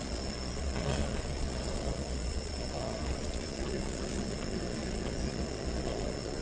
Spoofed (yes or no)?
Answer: yes